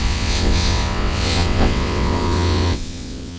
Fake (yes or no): yes